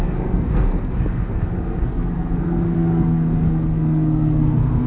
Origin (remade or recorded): remade